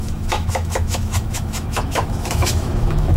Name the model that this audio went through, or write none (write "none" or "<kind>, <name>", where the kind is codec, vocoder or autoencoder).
autoencoder, DAC-VAE